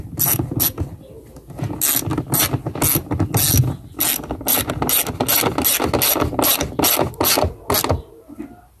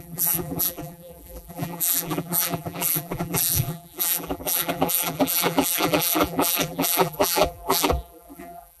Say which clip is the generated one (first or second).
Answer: second